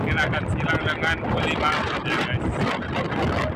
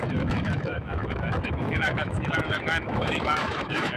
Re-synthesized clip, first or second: second